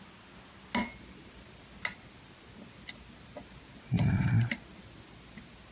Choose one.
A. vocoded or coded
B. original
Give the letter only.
B